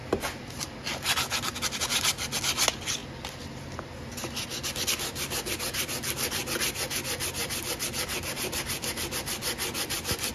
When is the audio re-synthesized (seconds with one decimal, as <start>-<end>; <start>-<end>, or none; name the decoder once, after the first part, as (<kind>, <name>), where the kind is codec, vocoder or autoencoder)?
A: 7.4-10.3 (vocoder, BigVGAN v2)